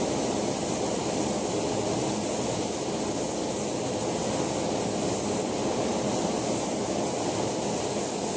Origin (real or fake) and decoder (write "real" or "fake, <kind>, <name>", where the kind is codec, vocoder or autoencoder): real